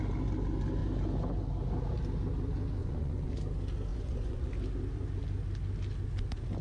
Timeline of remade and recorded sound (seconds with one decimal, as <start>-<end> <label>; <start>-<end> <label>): 0.0-2.8 recorded; 2.8-3.3 remade; 3.3-3.9 recorded; 3.9-4.5 remade; 4.5-6.6 recorded